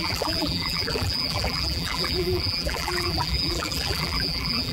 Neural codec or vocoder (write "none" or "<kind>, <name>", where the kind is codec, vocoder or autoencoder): vocoder, BigVGAN v2